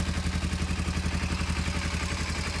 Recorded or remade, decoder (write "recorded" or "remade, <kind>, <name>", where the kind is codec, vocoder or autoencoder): recorded